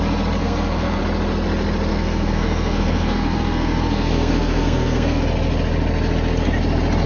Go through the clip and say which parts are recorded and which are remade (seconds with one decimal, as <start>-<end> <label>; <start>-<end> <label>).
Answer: 0.0-0.4 recorded; 0.4-1.0 remade; 1.0-1.9 recorded; 1.9-5.2 remade; 5.2-7.1 recorded